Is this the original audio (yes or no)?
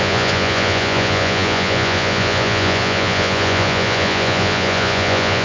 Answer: no